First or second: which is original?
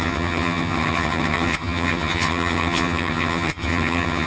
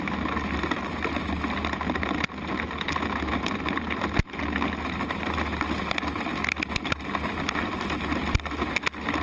second